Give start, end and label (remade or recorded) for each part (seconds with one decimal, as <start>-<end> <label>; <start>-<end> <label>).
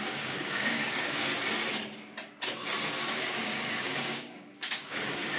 0.0-1.3 remade; 1.3-3.0 recorded; 3.0-5.4 remade